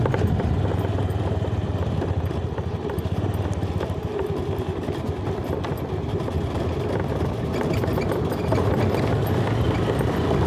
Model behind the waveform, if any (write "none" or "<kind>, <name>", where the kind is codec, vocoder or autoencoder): none